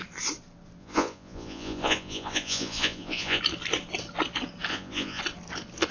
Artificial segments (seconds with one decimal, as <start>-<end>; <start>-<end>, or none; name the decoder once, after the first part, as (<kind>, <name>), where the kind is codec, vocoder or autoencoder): 0.8-3.4 (vocoder, Vocos); 4.7-5.2